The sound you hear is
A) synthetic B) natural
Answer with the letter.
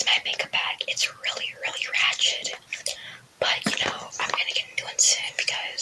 B